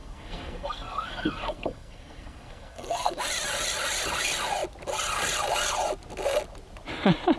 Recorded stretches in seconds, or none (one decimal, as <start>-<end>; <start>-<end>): 3.2-7.4